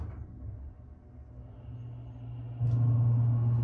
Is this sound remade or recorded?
recorded